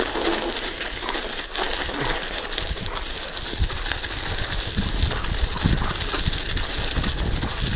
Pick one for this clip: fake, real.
real